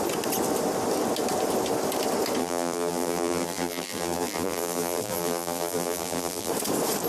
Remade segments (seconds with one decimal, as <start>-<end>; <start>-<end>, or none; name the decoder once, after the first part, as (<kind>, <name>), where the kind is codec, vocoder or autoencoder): 2.4-6.5 (vocoder, BigVGAN v2)